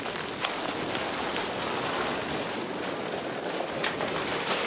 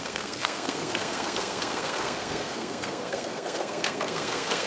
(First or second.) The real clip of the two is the first